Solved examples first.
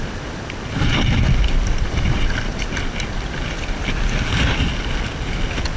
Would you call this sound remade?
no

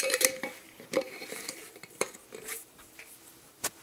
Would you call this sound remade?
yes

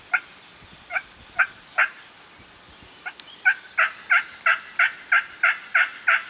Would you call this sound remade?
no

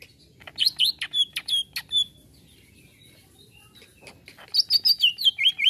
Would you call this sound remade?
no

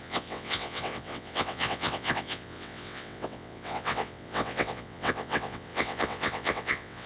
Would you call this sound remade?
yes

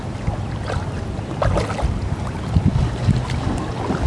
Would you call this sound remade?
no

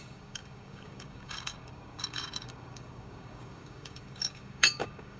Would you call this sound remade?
yes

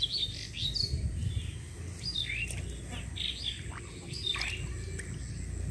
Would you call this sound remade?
no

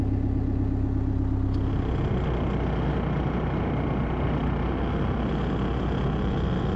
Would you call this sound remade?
no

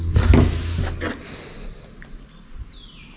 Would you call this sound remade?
no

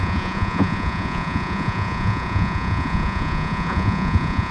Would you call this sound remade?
yes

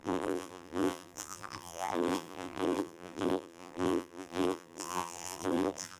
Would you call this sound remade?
yes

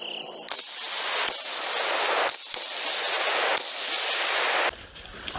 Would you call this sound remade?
no